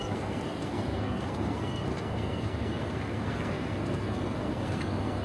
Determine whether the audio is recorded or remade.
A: remade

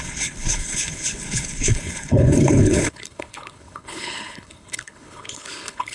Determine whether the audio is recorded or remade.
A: remade